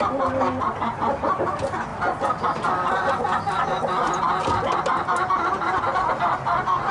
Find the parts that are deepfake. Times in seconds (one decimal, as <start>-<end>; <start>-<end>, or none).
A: none